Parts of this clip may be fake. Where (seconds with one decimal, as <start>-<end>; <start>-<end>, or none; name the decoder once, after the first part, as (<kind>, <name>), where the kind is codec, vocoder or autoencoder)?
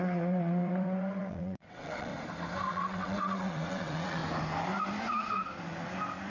0.0-2.1 (vocoder, WaveNeXt); 2.7-4.2